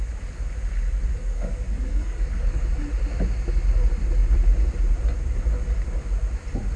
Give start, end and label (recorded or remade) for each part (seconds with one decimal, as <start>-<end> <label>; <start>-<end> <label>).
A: 0.0-1.1 recorded; 1.1-2.7 remade; 2.7-6.8 recorded